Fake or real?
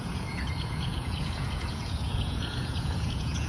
fake